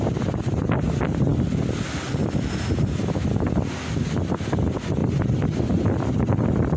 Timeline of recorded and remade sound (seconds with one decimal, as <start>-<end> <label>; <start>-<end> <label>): 0.0-6.8 recorded